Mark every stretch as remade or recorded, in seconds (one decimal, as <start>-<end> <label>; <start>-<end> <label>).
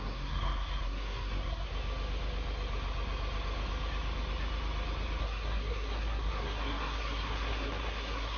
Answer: 0.0-1.7 remade; 1.7-5.2 recorded; 5.2-8.4 remade